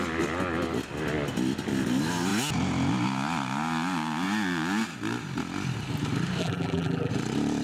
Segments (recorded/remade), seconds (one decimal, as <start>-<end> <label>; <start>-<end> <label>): 0.0-6.4 recorded; 6.4-7.1 remade; 7.1-7.6 recorded